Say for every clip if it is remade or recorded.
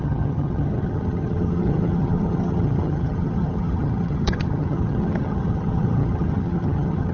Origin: remade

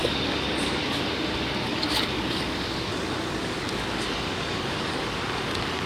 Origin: remade